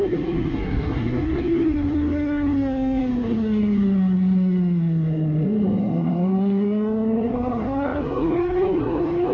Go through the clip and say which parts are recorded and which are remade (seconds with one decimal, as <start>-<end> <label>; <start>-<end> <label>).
0.0-9.3 remade